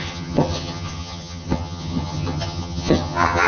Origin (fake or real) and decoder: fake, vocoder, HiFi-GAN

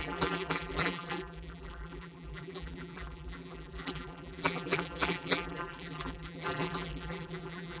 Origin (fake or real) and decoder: fake, vocoder, BigVGAN v2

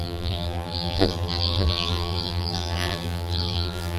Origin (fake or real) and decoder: fake, vocoder, BigVGAN v2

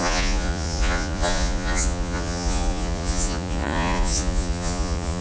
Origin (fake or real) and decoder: fake, vocoder, Vocos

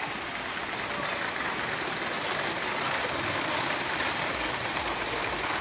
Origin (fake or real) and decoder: real